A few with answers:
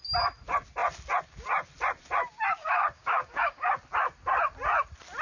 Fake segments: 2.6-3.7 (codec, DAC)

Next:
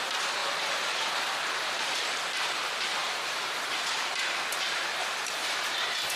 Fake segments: 0.0-6.2 (vocoder, BigVGAN v2)